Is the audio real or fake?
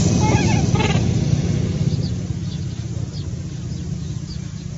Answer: real